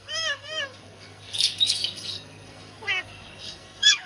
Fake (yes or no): yes